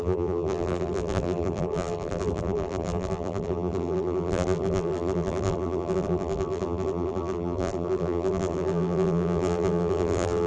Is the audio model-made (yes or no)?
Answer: yes